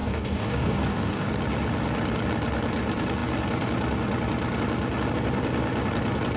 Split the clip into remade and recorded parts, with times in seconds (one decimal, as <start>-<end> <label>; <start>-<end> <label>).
0.0-1.3 remade; 1.3-6.4 recorded